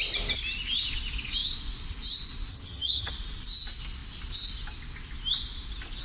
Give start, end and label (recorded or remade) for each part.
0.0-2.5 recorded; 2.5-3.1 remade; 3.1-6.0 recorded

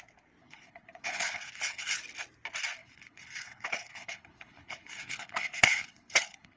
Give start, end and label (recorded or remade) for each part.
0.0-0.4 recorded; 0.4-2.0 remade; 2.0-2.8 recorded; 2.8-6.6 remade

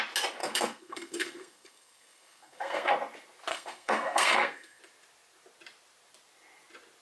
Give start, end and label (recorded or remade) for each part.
0.0-0.4 recorded; 0.4-2.9 remade; 2.9-3.5 recorded; 3.5-4.8 remade; 4.8-7.0 recorded

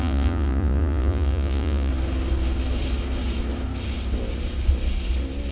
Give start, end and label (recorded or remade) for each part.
0.0-1.9 remade; 1.9-5.5 recorded

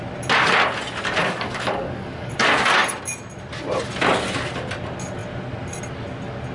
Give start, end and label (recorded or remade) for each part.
0.0-1.2 recorded; 1.2-2.3 remade; 2.3-6.5 recorded

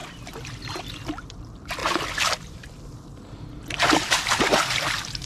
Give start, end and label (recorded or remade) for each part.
0.0-0.8 recorded; 0.8-1.8 remade; 1.8-5.3 recorded